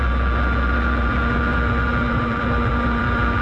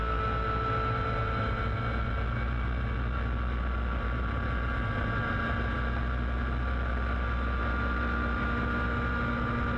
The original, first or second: second